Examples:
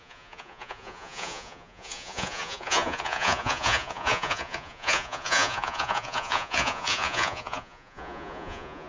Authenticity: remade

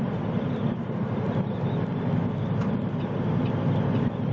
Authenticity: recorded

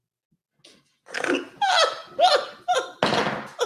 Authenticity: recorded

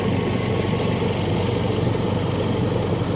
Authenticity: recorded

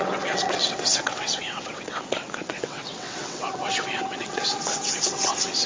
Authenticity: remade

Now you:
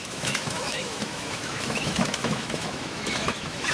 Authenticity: remade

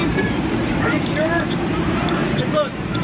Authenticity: remade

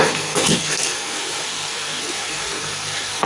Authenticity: remade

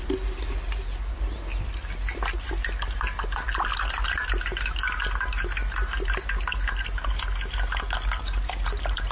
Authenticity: recorded